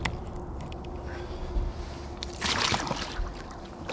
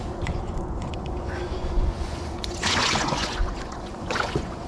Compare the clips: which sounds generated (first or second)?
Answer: second